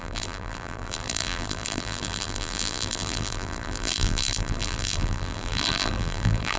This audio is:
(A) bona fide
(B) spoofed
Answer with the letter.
B